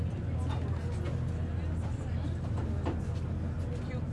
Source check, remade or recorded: recorded